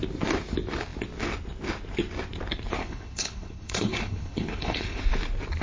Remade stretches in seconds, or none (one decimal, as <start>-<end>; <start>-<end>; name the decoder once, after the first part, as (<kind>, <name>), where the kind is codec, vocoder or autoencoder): 2.8-5.0 (codec, HILCodec)